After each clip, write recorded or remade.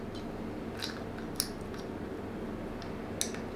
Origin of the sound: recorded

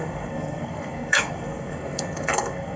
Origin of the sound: remade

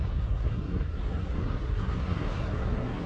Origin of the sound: remade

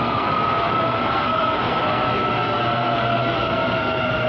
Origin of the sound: remade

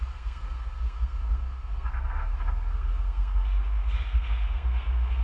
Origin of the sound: remade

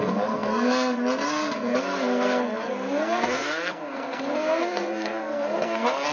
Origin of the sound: remade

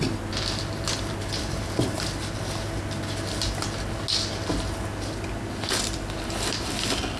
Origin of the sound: recorded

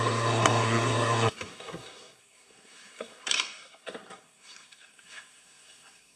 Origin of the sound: remade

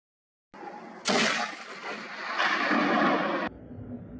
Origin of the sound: recorded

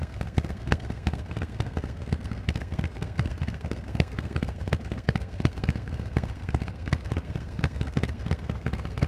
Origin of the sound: remade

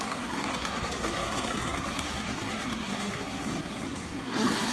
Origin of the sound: remade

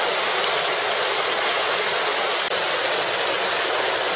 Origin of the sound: recorded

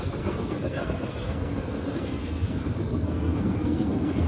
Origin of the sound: remade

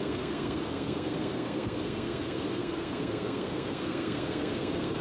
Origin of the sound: remade